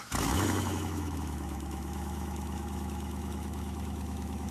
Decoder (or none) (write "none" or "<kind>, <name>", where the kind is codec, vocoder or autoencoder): autoencoder, DAC-VAE